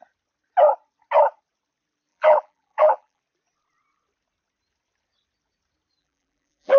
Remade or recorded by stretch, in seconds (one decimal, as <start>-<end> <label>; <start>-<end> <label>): 0.0-2.1 recorded; 2.1-3.2 remade; 3.2-6.0 recorded; 6.0-6.8 remade